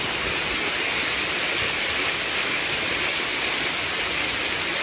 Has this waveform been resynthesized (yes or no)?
no